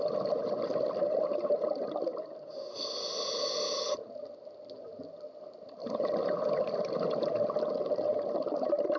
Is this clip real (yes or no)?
yes